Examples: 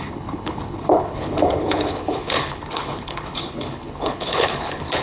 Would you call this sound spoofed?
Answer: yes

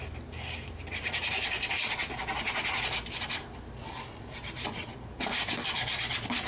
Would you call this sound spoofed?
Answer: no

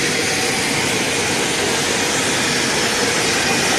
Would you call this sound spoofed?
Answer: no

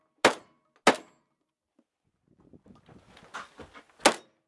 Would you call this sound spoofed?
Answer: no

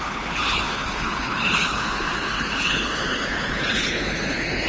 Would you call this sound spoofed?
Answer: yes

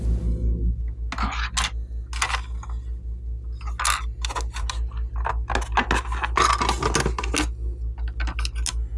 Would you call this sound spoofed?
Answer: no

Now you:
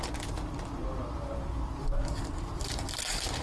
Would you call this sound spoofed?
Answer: no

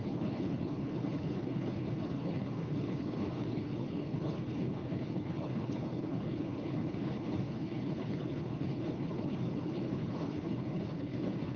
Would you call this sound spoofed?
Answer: yes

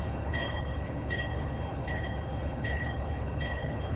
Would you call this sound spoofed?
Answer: yes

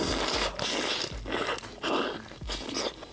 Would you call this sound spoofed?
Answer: no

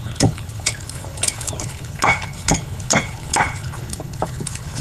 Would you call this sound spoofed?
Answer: yes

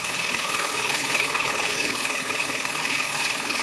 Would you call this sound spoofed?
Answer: yes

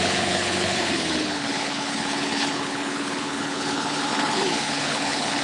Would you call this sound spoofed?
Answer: yes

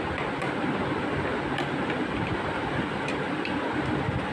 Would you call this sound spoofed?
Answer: no